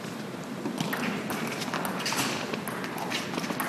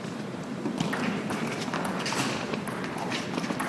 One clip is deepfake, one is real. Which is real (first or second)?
first